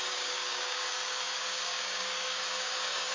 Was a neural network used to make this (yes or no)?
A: yes